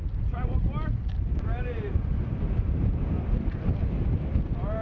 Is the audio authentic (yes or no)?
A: yes